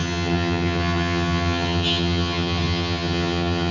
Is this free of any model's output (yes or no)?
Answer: no